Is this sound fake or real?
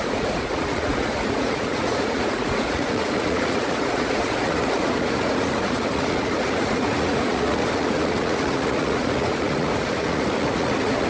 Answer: fake